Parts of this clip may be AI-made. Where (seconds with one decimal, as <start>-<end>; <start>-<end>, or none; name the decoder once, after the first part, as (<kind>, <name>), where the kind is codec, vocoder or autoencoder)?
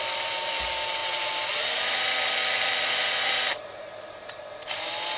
none